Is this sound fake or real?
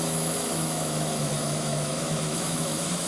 fake